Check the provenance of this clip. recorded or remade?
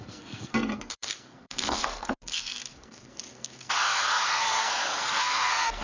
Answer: remade